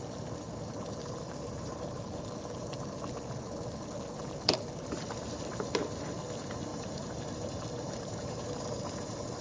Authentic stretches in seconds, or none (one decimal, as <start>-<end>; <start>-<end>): 0.0-1.0; 2.2-6.7